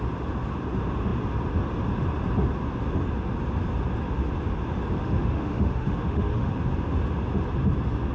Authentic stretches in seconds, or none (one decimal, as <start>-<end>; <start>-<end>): 0.0-5.0; 6.5-8.1